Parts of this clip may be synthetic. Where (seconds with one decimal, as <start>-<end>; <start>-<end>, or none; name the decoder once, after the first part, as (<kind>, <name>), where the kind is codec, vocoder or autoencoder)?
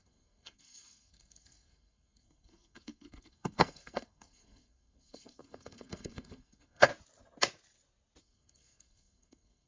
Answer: 0.0-6.9 (codec, SNAC); 8.2-9.7